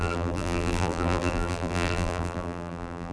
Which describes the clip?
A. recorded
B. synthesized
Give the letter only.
B